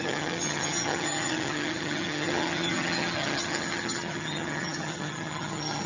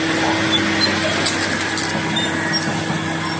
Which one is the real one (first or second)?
second